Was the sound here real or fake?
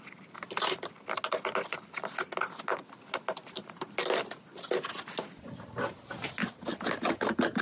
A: real